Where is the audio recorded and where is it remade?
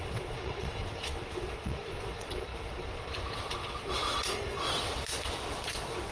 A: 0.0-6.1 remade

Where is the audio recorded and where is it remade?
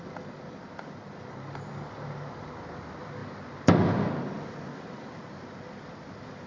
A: 0.0-6.5 recorded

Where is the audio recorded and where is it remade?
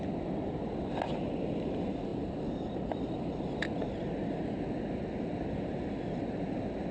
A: 0.0-6.9 recorded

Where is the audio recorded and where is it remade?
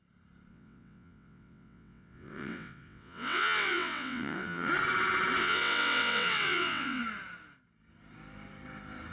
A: 0.0-0.5 recorded; 0.5-4.7 remade; 4.7-5.4 recorded; 5.4-7.0 remade; 7.0-9.1 recorded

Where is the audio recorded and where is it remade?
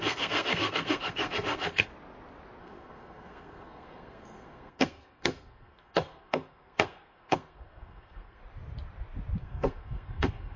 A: 0.0-1.9 remade; 1.9-2.6 recorded; 2.6-8.4 remade; 8.4-9.4 recorded; 9.4-10.6 remade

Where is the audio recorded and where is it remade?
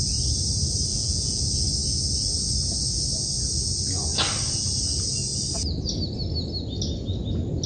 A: 0.0-0.9 recorded; 0.9-1.4 remade; 1.4-7.7 recorded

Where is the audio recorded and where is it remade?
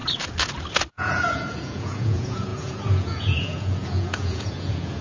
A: 0.0-0.9 recorded; 0.9-5.0 remade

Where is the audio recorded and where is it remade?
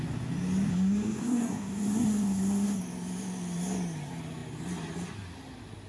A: 0.0-0.7 recorded; 0.7-2.8 remade; 2.8-5.9 recorded